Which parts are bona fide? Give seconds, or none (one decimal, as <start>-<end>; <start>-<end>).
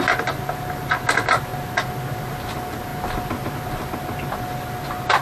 0.0-5.2